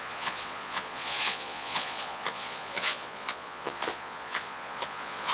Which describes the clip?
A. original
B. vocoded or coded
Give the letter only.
B